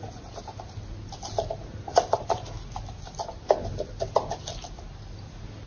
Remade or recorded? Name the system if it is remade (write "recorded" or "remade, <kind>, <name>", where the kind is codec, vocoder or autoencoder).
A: recorded